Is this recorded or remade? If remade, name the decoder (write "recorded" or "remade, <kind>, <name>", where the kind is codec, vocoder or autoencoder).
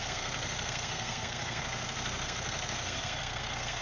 remade, codec, SNAC